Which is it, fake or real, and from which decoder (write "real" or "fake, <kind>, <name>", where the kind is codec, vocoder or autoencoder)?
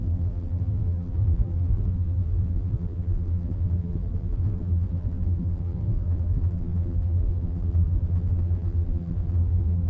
fake, vocoder, BigVGAN v2